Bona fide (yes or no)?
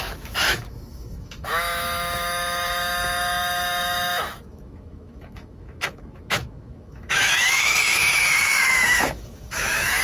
no